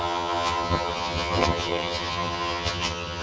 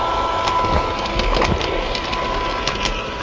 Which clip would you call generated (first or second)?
first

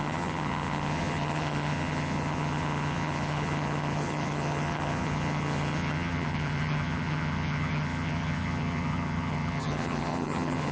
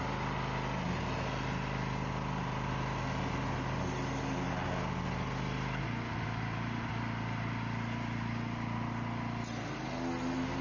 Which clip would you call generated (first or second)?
first